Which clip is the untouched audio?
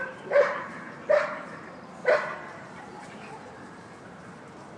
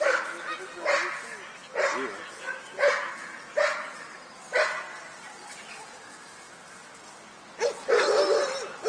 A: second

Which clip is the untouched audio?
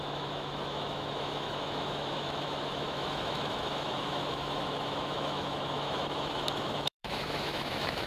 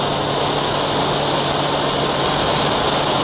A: second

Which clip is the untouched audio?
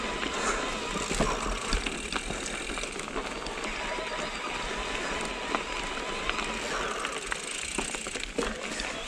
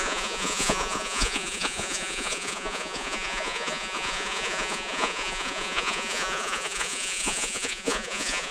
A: first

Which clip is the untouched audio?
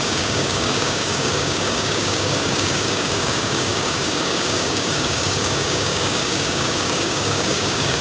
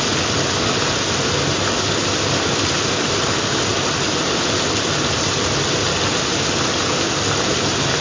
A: second